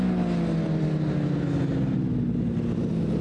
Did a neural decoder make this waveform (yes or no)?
no